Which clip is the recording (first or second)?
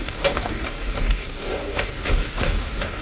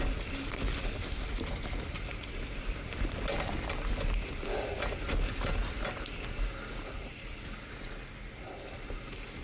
second